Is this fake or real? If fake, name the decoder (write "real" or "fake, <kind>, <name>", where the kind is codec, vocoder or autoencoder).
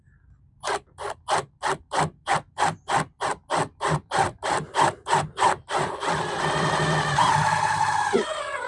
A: fake, vocoder, BigVGAN v2